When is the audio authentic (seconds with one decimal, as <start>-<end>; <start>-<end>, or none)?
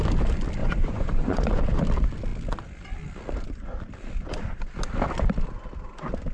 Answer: 0.0-0.6; 1.6-6.3